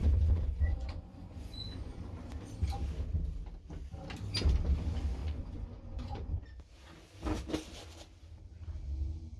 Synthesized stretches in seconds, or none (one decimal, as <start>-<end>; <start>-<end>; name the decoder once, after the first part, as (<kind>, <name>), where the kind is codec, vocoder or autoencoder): 0.0-2.0 (vocoder, Vocos); 5.2-6.4